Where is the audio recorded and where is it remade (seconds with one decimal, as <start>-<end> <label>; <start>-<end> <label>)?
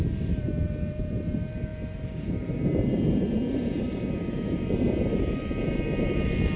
0.0-6.6 remade